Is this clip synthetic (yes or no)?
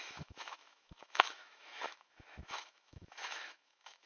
yes